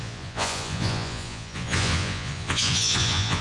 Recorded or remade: remade